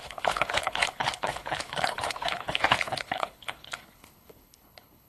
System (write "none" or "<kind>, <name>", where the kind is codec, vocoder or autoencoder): codec, HILCodec